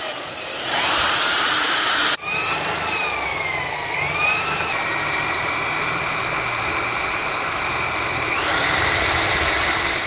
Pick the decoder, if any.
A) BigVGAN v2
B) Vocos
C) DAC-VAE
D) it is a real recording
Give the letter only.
A